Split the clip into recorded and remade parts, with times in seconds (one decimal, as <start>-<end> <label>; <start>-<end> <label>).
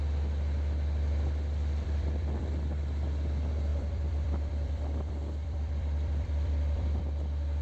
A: 0.0-1.6 recorded; 1.6-2.8 remade; 2.8-3.7 recorded; 3.7-7.0 remade; 7.0-7.6 recorded